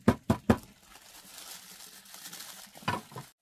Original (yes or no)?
yes